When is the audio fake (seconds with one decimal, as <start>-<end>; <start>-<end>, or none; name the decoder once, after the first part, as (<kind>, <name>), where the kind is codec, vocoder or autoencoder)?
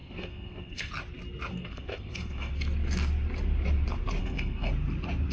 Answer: 0.0-0.9 (codec, SNAC); 1.5-2.5; 4.2-4.7